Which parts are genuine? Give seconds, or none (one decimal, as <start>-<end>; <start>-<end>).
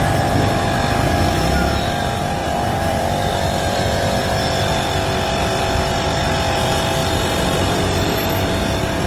0.0-2.4; 5.6-7.0; 8.3-9.1